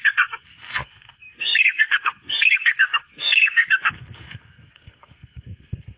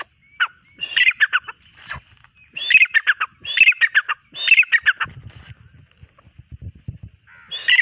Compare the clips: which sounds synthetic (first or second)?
first